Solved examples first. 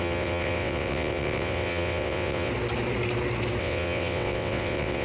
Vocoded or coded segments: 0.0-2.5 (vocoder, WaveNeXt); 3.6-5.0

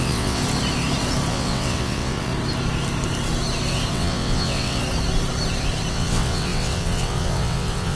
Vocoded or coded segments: 0.0-0.4 (vocoder, WaveNeXt); 1.3-2.3; 3.9-4.8; 5.9-8.0

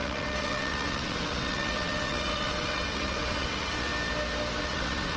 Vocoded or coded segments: 0.0-3.9 (vocoder, WaveNeXt); 4.6-5.2

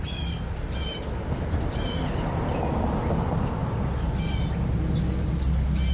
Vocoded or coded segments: none

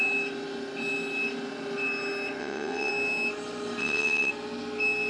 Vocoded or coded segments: 2.4-2.9 (vocoder, WaveNeXt); 3.8-4.3

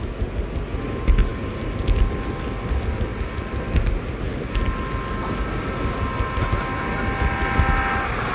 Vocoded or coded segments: none

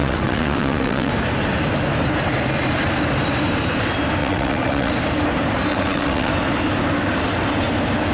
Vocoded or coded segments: 0.0-1.1 (vocoder, WaveNeXt); 4.2-4.9; 5.7-6.3

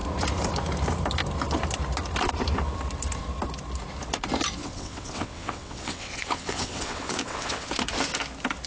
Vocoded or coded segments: 4.6-7.7 (vocoder, WaveNeXt)